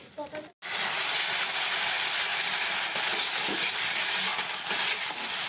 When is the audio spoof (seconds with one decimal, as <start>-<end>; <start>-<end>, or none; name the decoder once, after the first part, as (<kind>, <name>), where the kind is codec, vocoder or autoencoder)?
none